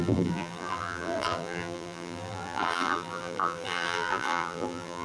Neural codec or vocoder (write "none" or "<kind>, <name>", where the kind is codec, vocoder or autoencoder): vocoder, BigVGAN v2